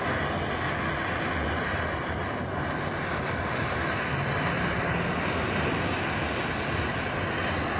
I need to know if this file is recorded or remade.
recorded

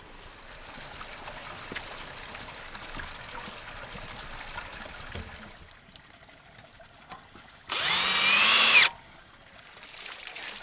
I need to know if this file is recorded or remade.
recorded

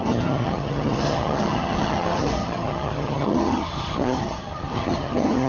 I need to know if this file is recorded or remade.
remade